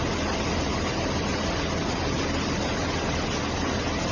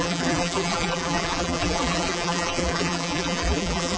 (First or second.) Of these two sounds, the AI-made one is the second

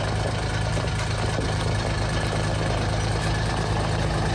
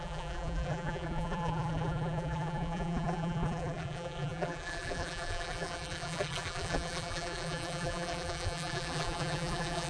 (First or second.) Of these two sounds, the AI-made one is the second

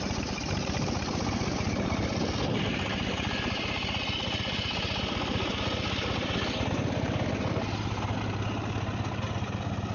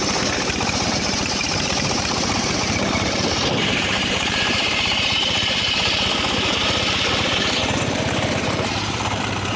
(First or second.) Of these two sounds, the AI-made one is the second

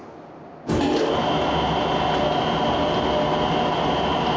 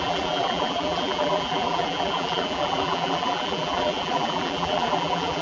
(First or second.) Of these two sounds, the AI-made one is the second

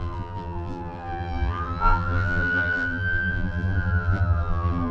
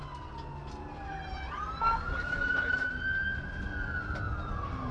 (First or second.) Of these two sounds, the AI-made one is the first